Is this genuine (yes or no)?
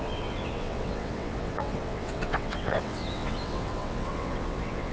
no